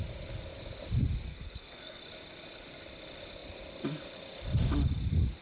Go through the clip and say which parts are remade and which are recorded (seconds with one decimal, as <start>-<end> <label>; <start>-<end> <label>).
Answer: 0.0-1.3 recorded; 1.3-2.0 remade; 2.0-5.4 recorded